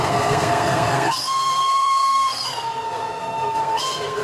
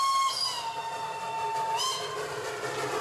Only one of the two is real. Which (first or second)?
second